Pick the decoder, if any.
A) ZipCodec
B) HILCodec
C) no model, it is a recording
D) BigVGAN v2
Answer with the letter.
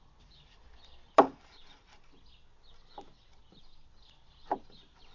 C